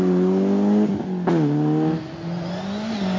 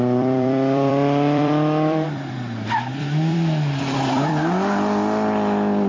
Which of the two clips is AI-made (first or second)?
second